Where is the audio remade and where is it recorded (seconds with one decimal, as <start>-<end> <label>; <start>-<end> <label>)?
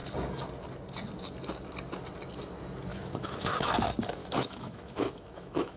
0.0-2.9 recorded; 2.9-3.7 remade; 3.7-4.2 recorded; 4.2-5.8 remade